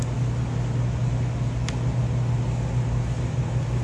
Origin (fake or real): real